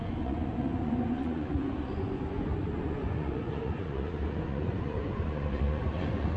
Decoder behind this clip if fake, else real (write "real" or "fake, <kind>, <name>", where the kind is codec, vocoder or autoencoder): fake, vocoder, Vocos